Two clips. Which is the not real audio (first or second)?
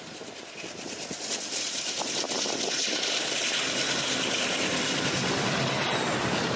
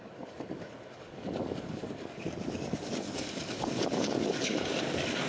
second